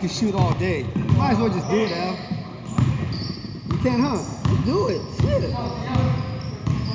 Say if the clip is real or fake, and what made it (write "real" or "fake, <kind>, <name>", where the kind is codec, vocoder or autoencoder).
real